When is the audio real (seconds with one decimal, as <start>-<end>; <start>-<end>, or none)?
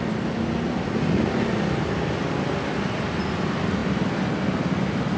0.0-5.2